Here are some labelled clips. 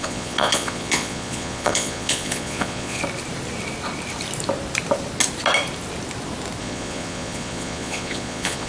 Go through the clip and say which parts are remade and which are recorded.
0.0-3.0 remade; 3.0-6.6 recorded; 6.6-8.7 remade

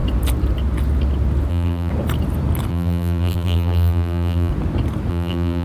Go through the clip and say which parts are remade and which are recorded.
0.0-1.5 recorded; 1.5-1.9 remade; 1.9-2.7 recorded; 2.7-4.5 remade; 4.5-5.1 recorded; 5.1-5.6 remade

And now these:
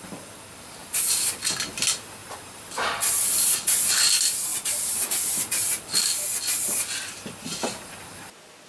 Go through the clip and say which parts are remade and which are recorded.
0.0-0.8 recorded; 0.8-1.4 remade; 1.4-4.5 recorded; 4.5-5.8 remade; 5.8-8.7 recorded

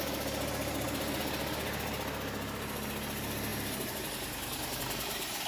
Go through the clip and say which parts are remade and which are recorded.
0.0-5.5 recorded

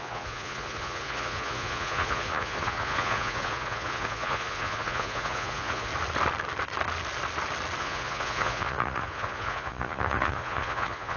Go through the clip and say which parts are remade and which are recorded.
0.0-5.9 remade; 5.9-7.8 recorded; 7.8-11.2 remade